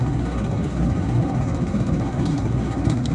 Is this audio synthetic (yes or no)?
yes